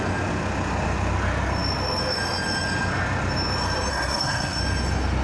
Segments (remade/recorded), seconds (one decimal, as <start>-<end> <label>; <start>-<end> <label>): 0.0-3.9 recorded; 3.9-4.6 remade; 4.6-5.2 recorded